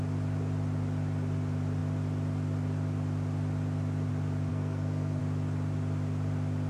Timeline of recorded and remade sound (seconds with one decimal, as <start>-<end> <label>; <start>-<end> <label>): 0.0-4.5 recorded; 4.5-5.2 remade; 5.2-6.7 recorded